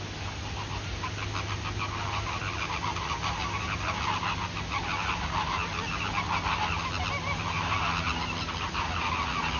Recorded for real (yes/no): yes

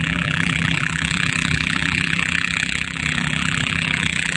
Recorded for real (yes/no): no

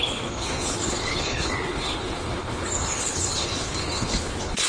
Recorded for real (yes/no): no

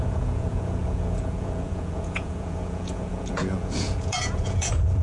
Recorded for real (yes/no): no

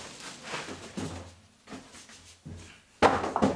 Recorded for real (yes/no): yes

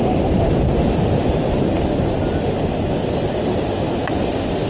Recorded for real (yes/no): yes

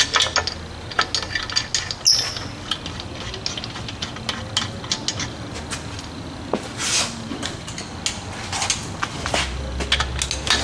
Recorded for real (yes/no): yes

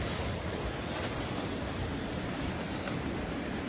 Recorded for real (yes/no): no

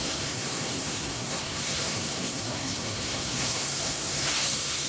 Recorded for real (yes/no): no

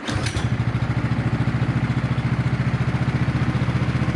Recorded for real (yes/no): yes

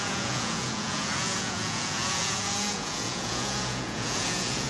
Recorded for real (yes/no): no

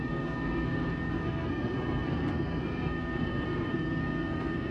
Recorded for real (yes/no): no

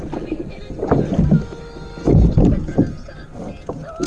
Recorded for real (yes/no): yes